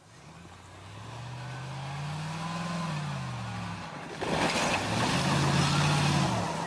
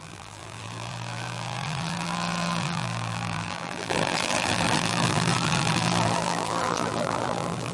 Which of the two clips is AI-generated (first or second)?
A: second